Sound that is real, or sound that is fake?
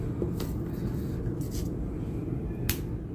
real